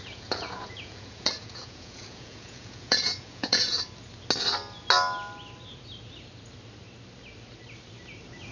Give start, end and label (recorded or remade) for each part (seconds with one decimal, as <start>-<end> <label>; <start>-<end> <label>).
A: 0.0-3.7 remade; 3.7-8.5 recorded